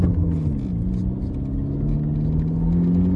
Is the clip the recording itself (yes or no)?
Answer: yes